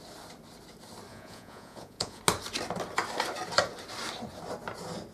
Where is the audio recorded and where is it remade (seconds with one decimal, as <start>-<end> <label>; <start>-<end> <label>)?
0.0-1.1 recorded; 1.1-2.2 remade; 2.2-5.1 recorded